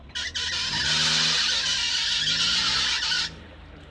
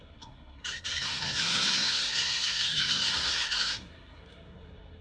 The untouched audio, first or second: first